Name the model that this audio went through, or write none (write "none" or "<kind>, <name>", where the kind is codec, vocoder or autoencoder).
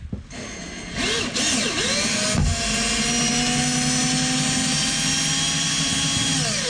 none